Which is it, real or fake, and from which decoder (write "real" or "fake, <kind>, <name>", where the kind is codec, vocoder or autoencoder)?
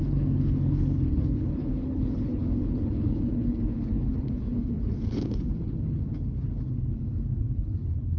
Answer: fake, codec, HILCodec